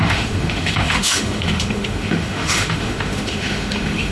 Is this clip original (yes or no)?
no